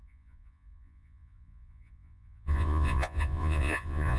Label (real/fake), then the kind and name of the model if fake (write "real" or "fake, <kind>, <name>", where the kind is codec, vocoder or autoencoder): fake, vocoder, Vocos